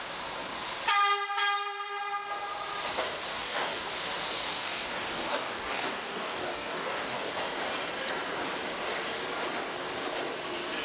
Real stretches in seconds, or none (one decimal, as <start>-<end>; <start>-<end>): 0.0-3.3; 3.9-4.3; 7.3-10.8